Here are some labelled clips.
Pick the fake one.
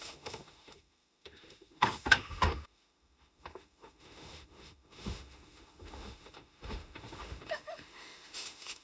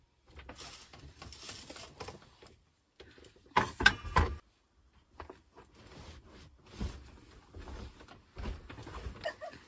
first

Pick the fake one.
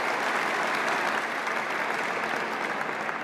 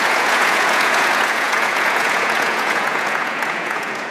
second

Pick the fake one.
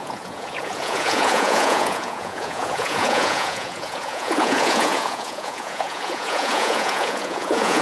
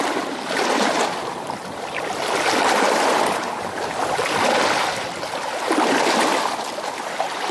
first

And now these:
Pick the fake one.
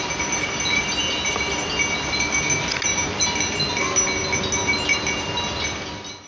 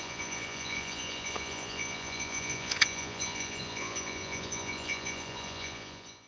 second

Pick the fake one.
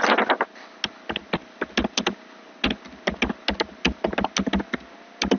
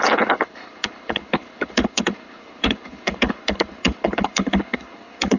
second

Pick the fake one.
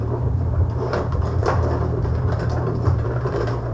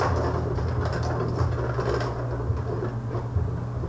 first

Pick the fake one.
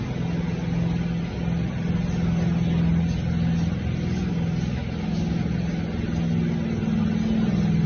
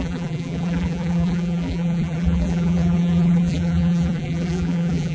second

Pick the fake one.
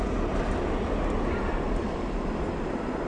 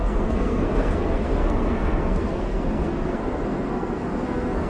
second